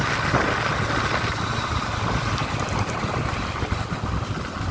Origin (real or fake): real